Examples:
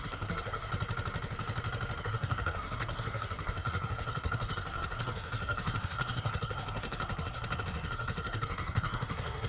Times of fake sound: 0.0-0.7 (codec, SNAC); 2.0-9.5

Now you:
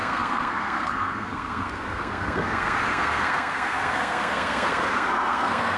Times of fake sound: 0.0-5.8 (codec, SNAC)

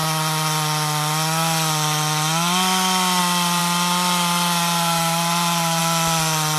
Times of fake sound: none

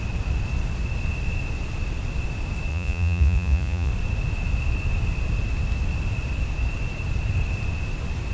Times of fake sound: 2.7-3.9 (vocoder, Vocos)

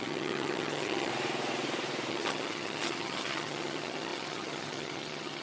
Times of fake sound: 0.0-1.1 (vocoder, HiFi-GAN); 2.1-5.4

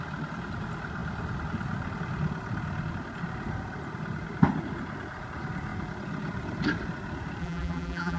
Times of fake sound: 7.4-8.2 (vocoder, BigVGAN v2)